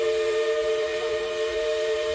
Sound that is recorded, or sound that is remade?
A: remade